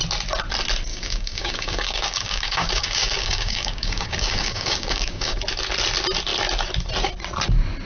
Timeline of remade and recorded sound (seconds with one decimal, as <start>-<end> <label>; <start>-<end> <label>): 0.0-0.9 recorded; 0.9-5.4 remade; 5.4-7.8 recorded